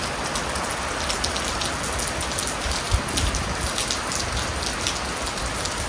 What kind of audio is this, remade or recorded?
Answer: recorded